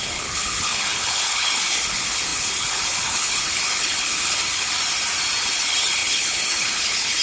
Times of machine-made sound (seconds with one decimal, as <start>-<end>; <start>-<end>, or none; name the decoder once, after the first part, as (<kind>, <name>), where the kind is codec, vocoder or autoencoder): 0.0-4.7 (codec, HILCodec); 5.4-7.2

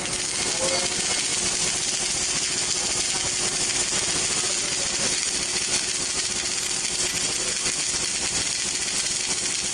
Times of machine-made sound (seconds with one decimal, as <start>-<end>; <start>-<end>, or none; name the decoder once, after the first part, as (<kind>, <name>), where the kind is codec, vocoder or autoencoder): none

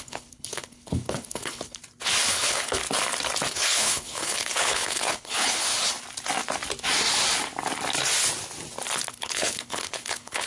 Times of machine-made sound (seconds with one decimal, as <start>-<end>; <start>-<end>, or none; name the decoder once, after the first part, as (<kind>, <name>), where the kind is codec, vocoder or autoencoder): 0.0-1.8 (codec, HILCodec); 2.3-2.8; 3.5-5.7; 9.1-10.5

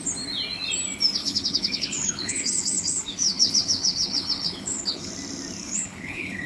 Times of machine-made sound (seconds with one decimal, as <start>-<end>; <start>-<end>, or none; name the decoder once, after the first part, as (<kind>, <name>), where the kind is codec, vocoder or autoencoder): 1.2-5.1 (codec, HILCodec); 5.6-6.5